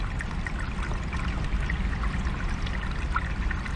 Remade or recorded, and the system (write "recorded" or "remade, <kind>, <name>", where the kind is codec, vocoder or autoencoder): recorded